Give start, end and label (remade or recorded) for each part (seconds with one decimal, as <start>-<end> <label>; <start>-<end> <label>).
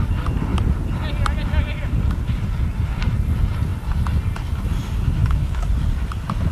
0.0-5.2 recorded; 5.2-5.7 remade; 5.7-6.5 recorded